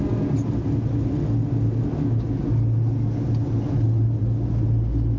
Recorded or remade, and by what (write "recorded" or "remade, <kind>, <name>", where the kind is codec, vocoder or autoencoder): recorded